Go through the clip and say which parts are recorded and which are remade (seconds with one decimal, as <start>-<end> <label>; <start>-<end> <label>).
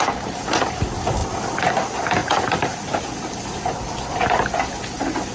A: 0.0-5.3 recorded